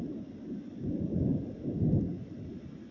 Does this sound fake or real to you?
real